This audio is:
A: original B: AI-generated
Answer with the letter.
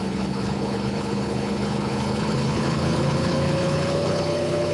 B